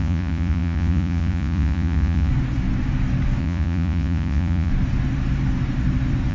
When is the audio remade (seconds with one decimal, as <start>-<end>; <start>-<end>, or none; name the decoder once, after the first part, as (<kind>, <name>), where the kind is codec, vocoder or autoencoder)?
0.0-2.3 (vocoder, Vocos); 3.4-4.7